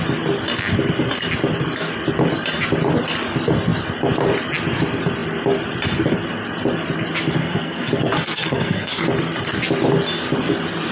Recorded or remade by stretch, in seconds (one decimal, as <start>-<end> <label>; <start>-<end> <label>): 0.0-7.4 recorded; 7.4-8.9 remade; 8.9-10.9 recorded